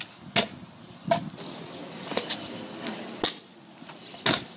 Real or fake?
real